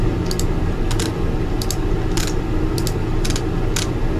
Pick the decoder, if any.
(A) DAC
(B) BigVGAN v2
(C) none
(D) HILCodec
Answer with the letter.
C